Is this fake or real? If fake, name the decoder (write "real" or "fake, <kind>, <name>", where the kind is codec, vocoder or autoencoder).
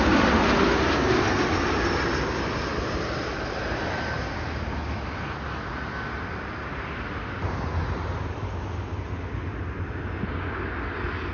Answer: real